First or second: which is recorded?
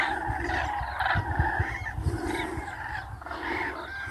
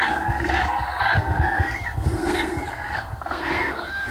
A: first